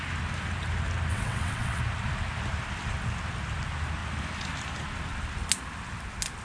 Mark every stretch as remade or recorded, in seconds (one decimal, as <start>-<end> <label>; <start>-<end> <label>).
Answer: 0.0-1.1 recorded; 1.1-1.8 remade; 1.8-6.4 recorded